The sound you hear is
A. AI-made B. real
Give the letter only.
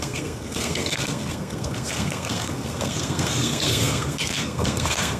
A